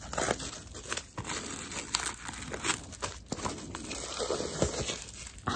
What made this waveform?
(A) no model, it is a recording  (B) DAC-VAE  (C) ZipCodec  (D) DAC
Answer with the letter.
A